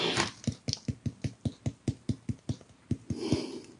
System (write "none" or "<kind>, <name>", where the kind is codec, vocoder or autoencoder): none